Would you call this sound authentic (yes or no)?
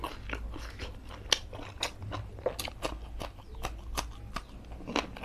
yes